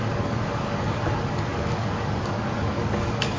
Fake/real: fake